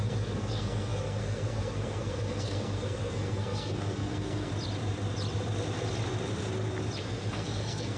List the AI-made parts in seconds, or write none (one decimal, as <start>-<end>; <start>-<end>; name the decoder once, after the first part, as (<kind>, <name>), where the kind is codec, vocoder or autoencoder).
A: 0.0-4.5 (codec, SNAC); 7.0-8.0

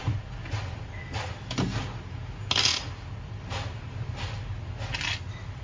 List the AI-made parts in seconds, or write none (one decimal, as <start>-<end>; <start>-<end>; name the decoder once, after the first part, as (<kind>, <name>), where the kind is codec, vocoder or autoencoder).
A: none